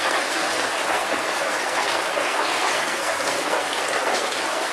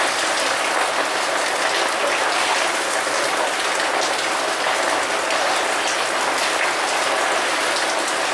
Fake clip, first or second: first